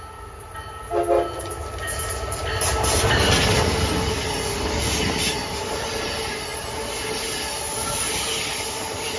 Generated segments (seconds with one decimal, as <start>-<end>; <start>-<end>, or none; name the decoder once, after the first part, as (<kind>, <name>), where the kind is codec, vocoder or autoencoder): none